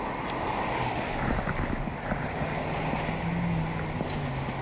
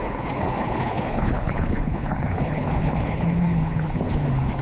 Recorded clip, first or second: first